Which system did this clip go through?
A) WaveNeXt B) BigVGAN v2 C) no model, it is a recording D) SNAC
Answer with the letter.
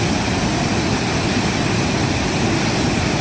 C